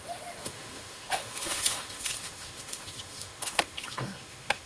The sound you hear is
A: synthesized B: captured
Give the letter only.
A